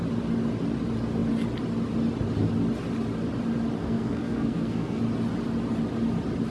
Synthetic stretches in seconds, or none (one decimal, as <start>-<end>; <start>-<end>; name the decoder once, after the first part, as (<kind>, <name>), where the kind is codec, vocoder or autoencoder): 3.8-5.0 (codec, SNAC)